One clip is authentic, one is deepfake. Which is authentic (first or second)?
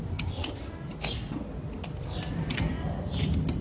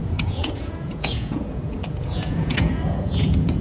first